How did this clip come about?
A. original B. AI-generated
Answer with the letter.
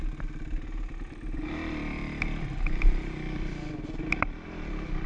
B